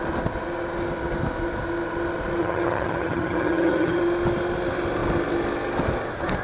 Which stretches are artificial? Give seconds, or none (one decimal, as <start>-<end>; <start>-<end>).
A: 2.4-4.0

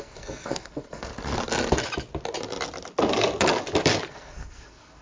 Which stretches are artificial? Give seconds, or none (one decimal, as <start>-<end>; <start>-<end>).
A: 0.0-1.1; 4.1-5.0